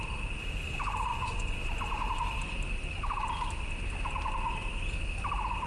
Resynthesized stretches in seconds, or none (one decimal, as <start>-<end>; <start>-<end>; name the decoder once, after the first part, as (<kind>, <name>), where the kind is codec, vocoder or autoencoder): 1.1-1.6 (vocoder, Vocos)